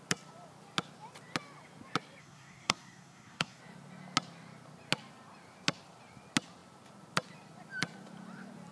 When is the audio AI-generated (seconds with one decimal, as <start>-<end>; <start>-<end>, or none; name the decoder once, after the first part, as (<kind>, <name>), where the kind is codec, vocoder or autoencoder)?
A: 2.2-3.6 (codec, SNAC)